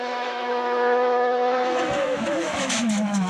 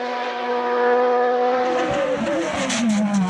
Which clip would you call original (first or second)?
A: second